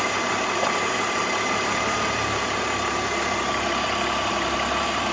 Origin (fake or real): real